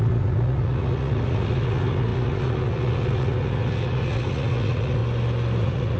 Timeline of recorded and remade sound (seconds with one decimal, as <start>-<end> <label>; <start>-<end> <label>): 0.0-5.0 remade; 5.0-5.6 recorded; 5.6-6.0 remade